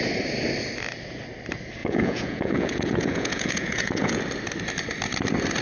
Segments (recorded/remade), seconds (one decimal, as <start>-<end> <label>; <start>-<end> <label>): 0.0-1.8 recorded; 1.8-4.2 remade; 4.2-5.6 recorded